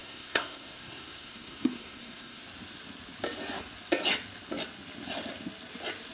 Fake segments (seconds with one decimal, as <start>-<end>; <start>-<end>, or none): 0.0-2.4